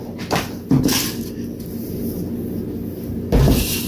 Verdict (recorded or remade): recorded